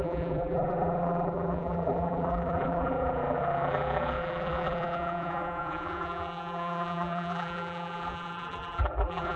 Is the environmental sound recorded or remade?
remade